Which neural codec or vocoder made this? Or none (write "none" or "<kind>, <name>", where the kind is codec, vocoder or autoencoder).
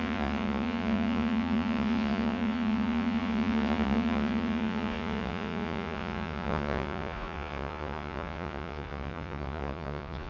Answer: vocoder, Vocos